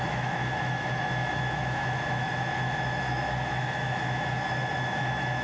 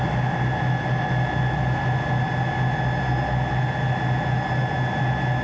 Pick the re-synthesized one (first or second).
first